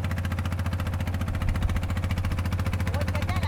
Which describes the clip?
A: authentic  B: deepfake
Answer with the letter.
A